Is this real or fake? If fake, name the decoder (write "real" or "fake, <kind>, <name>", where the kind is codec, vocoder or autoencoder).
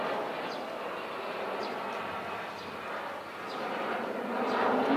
real